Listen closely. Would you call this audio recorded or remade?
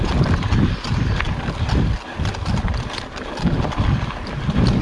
recorded